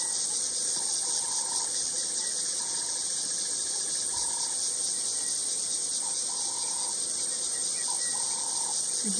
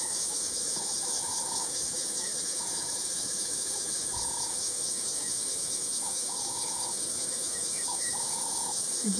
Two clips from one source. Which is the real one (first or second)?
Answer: first